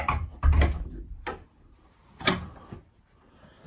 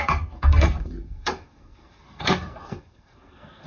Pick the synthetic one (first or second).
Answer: second